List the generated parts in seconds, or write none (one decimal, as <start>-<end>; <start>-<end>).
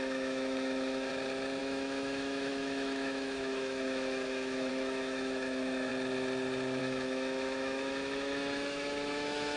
0.0-1.1; 1.6-5.9; 6.8-9.6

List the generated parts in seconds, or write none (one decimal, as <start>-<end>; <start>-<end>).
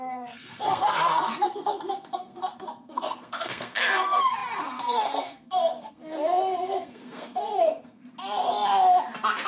0.0-8.0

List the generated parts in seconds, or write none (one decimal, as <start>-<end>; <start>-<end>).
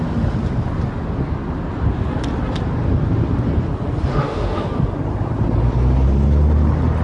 4.1-4.7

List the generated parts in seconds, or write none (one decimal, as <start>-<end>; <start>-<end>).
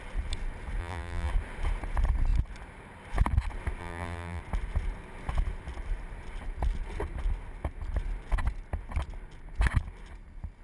0.8-1.3; 3.8-4.4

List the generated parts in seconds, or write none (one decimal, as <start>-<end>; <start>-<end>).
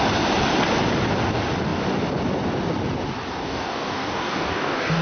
3.4-5.0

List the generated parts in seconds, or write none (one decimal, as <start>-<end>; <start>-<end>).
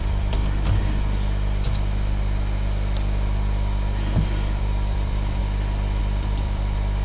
0.0-0.4; 4.6-5.4; 6.0-7.0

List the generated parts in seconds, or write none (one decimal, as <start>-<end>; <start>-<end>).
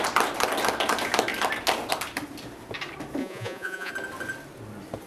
3.2-3.9